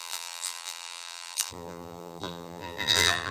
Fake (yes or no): yes